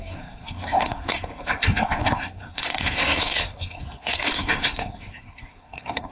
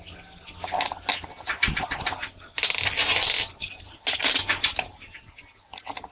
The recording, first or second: second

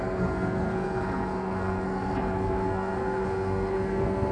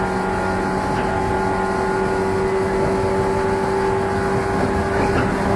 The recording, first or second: second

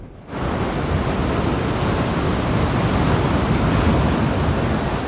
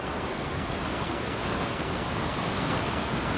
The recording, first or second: first